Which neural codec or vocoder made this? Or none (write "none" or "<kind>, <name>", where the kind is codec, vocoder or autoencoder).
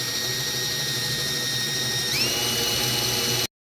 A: none